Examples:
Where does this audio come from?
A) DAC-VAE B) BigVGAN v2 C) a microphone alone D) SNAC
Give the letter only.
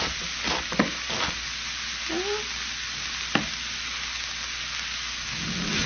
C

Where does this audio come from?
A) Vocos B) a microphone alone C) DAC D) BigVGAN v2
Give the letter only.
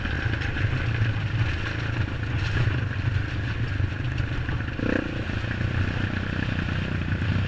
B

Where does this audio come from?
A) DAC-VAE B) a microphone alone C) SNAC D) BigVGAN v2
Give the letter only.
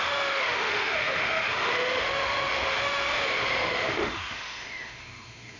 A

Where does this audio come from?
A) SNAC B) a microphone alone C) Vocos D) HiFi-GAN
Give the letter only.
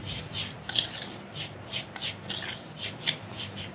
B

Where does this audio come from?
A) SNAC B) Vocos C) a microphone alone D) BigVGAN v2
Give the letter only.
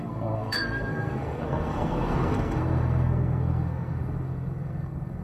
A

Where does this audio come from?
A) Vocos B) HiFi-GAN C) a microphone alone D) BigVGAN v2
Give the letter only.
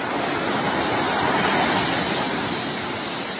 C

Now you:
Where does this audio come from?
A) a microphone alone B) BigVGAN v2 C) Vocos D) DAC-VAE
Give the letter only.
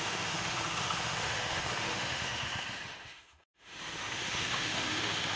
D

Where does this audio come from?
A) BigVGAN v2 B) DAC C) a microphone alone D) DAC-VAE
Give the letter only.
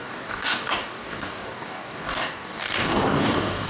B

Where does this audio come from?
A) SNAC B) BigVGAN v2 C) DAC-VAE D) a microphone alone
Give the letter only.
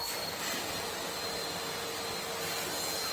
D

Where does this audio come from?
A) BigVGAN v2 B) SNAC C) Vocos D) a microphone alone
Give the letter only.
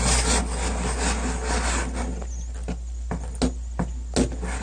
D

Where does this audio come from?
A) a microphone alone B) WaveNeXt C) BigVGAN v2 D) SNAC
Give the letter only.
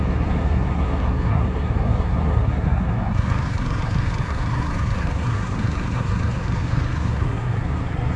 D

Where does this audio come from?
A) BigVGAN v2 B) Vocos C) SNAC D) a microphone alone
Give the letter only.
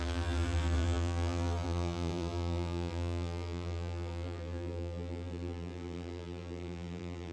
A